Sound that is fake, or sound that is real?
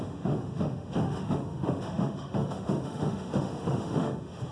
fake